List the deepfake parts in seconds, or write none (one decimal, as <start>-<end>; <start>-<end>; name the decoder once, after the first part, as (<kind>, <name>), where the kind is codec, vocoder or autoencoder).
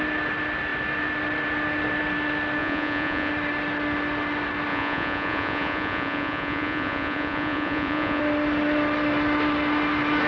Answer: 2.6-3.3 (vocoder, Vocos); 4.7-8.2